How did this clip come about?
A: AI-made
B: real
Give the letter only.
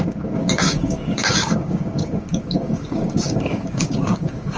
A